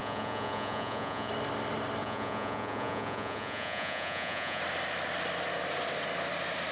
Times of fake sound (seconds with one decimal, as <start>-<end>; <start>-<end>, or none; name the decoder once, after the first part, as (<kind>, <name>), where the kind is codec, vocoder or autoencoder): 0.0-1.3 (vocoder, Vocos); 2.0-4.6